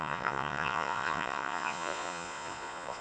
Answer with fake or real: fake